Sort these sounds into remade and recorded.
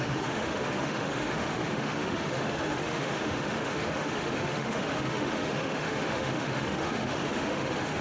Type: remade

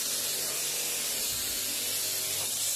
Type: recorded